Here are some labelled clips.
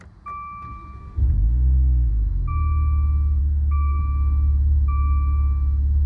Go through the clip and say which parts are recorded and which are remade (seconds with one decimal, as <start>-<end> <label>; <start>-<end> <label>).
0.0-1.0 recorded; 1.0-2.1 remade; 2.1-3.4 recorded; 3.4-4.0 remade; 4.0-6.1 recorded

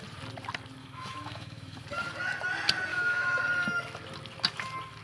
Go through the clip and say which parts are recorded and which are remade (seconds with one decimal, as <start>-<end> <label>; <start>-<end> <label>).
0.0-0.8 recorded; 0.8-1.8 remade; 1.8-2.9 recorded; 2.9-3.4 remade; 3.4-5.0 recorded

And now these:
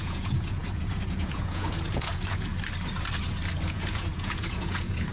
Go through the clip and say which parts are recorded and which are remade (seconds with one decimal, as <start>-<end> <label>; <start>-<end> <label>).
0.0-2.5 remade; 2.5-3.5 recorded; 3.5-5.1 remade

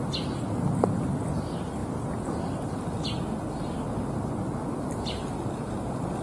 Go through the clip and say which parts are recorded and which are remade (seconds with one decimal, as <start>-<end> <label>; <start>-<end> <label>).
0.0-6.2 recorded